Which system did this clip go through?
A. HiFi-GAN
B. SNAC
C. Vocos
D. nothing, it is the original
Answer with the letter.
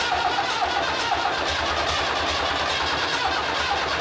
D